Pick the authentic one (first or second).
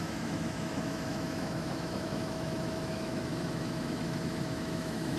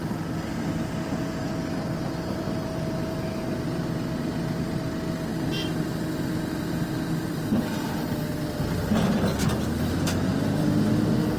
second